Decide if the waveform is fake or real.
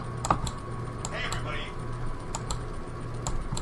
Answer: real